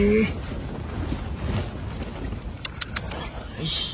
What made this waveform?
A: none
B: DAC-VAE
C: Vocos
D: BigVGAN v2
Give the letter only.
A